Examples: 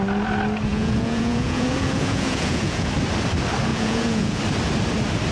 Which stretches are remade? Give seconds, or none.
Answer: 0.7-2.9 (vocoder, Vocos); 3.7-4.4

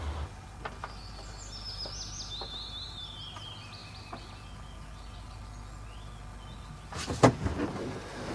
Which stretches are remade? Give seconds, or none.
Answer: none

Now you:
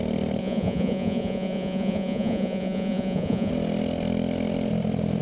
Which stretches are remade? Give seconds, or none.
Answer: 0.4-3.5 (vocoder, Vocos)